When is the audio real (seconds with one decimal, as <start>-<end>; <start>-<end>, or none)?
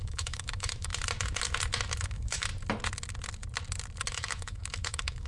0.9-2.0; 2.5-4.1